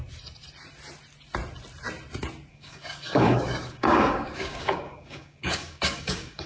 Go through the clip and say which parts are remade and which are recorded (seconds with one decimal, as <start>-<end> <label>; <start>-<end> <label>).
0.0-2.5 recorded; 2.5-6.5 remade